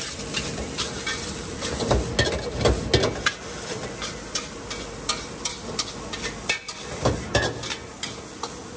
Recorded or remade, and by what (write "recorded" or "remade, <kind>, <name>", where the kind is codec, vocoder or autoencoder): recorded